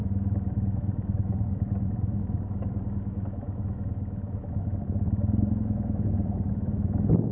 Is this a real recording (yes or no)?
no